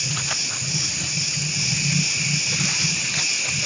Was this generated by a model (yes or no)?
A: no